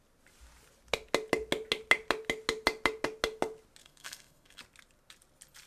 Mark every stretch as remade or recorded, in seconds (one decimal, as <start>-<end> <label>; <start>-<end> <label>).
0.0-3.8 recorded; 3.8-4.6 remade; 4.6-5.7 recorded